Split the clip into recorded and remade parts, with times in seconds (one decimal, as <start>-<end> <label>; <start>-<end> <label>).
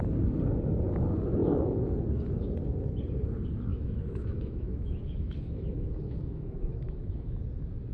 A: 0.0-3.7 recorded; 3.7-7.4 remade; 7.4-7.9 recorded